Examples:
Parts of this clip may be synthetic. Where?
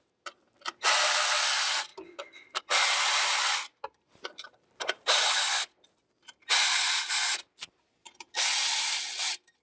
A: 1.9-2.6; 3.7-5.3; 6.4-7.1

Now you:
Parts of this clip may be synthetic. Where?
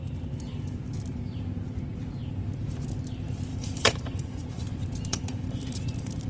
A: 3.5-4.6; 5.1-6.3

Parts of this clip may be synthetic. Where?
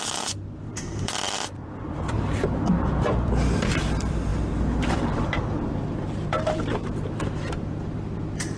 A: 0.0-8.6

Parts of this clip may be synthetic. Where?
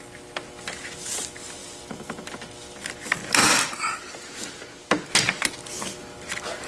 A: 1.6-2.3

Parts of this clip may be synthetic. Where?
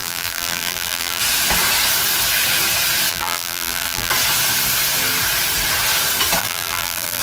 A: 0.0-1.2; 3.1-4.1; 6.4-7.2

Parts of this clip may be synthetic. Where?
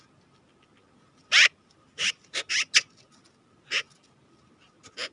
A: 1.2-2.4